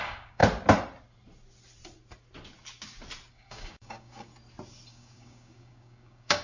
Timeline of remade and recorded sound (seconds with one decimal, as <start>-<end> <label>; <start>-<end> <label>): 0.0-0.4 remade; 0.4-3.3 recorded; 3.3-4.3 remade; 4.3-4.9 recorded; 4.9-6.4 remade